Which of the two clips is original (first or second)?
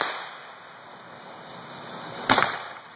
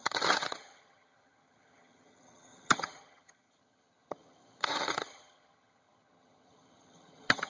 first